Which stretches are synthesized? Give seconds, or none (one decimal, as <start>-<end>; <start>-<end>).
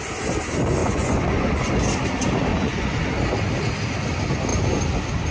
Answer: 0.8-1.7; 2.5-3.0